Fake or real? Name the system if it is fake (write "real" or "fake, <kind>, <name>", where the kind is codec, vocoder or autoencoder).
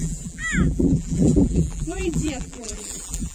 fake, vocoder, BigVGAN v2